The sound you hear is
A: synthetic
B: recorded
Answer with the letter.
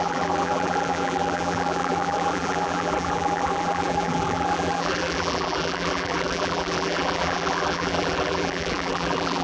A